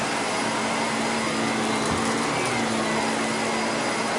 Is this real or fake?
real